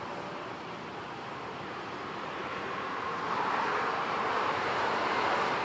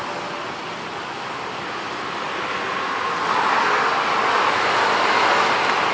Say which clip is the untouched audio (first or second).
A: second